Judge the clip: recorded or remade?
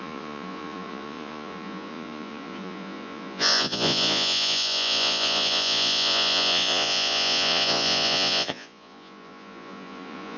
remade